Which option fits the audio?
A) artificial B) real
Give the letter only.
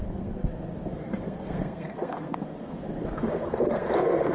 A